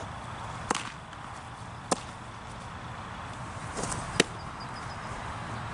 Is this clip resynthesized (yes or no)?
no